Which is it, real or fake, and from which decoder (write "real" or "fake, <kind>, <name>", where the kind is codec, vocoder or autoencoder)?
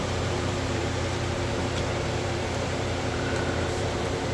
fake, vocoder, BigVGAN v2